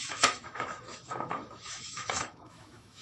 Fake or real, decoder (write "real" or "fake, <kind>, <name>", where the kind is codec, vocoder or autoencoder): fake, autoencoder, DAC-VAE